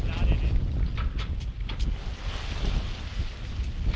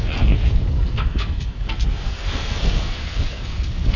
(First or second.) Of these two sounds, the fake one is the second